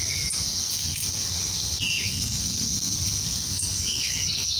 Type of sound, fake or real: fake